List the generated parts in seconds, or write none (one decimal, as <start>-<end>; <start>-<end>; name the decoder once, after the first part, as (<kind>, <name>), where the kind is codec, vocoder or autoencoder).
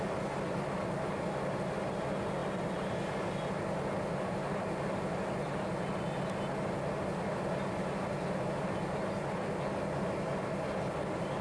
none